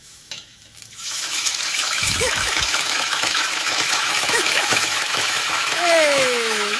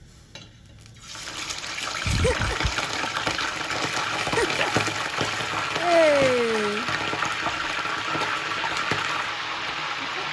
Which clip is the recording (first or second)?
second